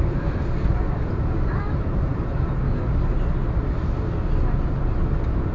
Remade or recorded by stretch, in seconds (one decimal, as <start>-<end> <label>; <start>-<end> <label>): 0.0-5.5 recorded